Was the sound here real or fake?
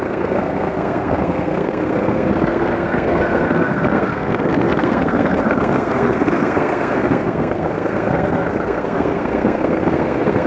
fake